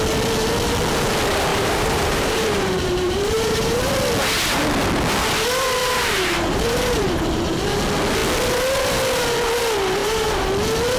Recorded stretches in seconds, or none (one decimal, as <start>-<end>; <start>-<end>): 0.0-1.5; 3.9-5.8; 7.8-10.0; 10.5-11.0